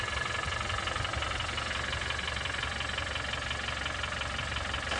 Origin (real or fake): real